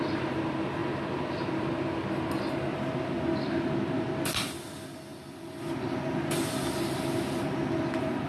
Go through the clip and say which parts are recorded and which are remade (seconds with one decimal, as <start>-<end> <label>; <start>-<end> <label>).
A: 0.0-8.3 recorded